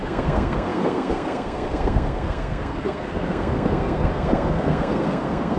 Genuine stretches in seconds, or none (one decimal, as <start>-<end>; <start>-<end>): none

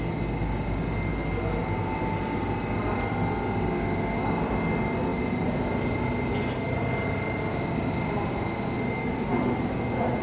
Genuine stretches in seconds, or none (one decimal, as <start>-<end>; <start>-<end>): 0.0-10.2

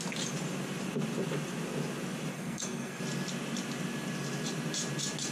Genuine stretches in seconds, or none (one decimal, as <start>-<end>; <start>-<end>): 0.0-2.3; 3.0-5.3